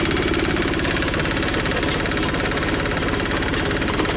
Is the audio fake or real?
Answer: real